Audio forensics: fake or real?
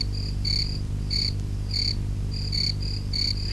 fake